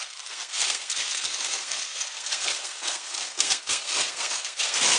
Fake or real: fake